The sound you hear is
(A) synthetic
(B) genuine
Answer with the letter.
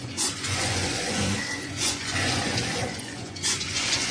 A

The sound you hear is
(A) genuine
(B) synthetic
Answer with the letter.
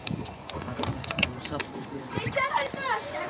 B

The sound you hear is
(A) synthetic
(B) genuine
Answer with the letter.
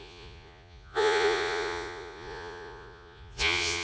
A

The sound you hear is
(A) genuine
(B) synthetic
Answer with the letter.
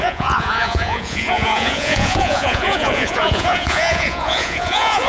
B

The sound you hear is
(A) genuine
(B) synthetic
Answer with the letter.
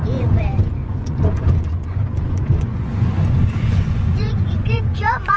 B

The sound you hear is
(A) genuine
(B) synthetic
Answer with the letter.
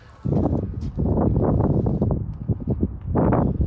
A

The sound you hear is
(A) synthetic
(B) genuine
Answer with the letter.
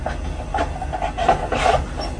B